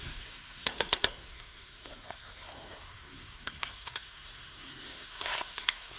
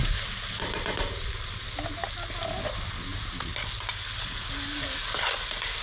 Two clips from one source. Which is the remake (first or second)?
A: first